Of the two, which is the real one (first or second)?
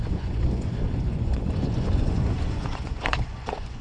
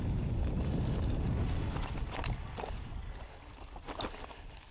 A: second